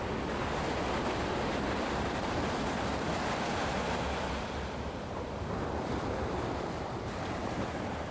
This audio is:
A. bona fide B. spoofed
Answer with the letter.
A